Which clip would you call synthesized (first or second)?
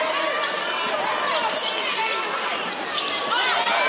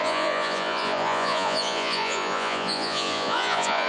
second